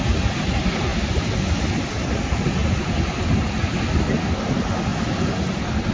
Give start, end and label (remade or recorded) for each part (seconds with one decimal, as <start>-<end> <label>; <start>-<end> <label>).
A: 0.0-5.9 recorded